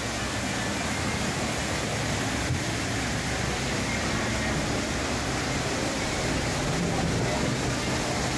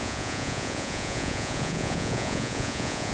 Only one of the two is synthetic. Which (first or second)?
second